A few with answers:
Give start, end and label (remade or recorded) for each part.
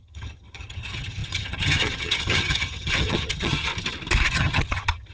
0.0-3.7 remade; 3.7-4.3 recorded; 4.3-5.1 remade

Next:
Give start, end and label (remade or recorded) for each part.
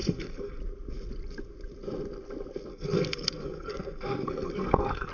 0.0-0.6 remade; 0.6-2.7 recorded; 2.7-5.1 remade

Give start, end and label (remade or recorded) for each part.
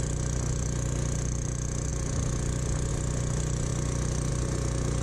0.0-5.0 recorded